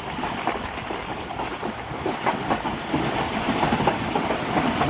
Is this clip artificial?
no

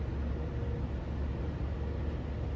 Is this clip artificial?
no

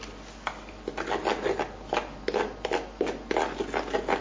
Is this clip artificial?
no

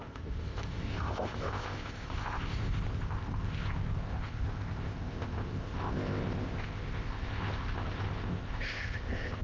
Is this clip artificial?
yes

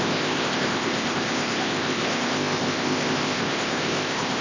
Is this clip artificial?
yes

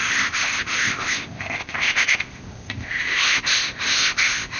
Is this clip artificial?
yes